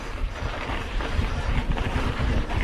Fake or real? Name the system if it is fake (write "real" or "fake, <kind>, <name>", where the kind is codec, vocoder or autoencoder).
fake, vocoder, BigVGAN v2